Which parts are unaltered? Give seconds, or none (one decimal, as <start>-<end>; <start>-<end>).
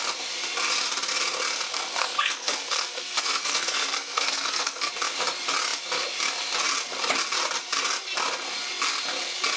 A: 0.0-1.7; 4.9-9.6